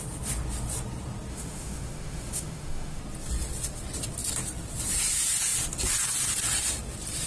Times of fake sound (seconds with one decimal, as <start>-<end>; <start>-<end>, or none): 1.3-3.0